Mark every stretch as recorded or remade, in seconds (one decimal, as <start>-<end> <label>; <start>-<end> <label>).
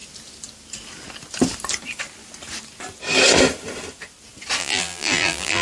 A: 0.0-4.6 recorded; 4.6-5.6 remade